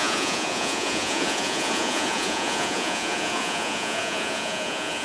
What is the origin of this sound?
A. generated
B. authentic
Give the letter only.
A